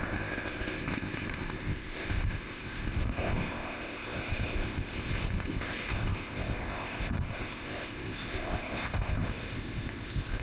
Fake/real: fake